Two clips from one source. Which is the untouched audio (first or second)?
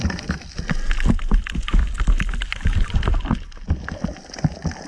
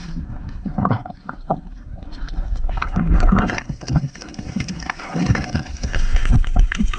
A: first